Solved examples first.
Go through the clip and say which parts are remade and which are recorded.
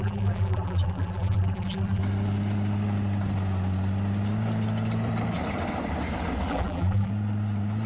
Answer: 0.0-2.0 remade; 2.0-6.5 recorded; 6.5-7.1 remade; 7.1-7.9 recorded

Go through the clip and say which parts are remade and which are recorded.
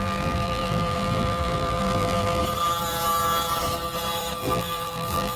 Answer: 0.0-2.4 remade; 2.4-4.4 recorded; 4.4-5.4 remade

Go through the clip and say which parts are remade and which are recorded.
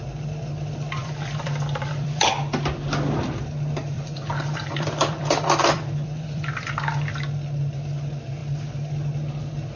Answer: 0.0-1.0 recorded; 1.0-2.3 remade; 2.3-3.8 recorded; 3.8-6.7 remade; 6.7-9.8 recorded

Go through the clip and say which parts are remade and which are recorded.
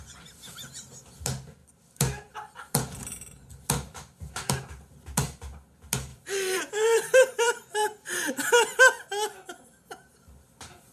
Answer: 0.0-6.1 recorded; 6.1-8.5 remade; 8.5-10.9 recorded